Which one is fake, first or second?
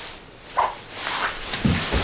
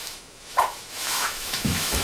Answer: second